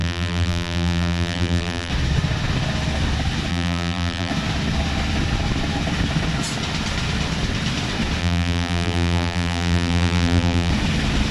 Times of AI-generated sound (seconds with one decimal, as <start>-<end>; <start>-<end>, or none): 0.0-1.9; 3.5-4.3; 8.2-10.7